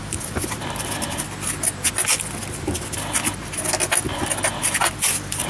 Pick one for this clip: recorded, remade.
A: recorded